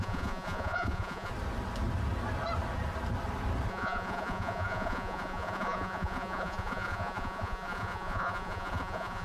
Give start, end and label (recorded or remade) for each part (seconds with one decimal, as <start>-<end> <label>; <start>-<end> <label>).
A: 0.0-1.3 remade; 1.3-3.7 recorded; 3.7-9.2 remade